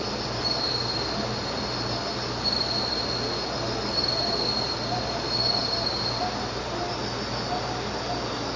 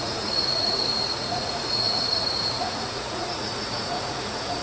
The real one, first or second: first